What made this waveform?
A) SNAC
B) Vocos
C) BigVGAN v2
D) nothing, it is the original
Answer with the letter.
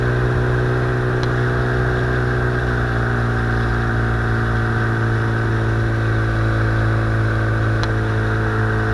D